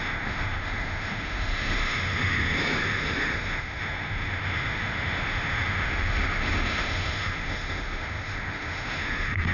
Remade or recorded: remade